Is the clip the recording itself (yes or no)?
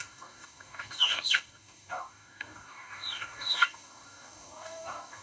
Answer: no